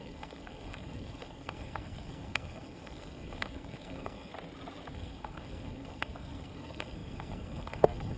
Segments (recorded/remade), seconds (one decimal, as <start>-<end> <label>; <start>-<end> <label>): 0.0-4.3 remade; 4.3-4.9 recorded; 4.9-8.2 remade